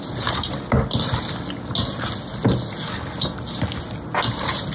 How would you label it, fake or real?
real